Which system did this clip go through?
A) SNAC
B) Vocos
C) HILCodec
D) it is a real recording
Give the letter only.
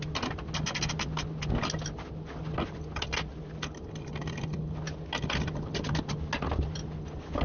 D